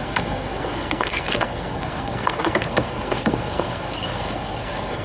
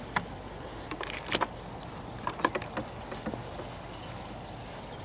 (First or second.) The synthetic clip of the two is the first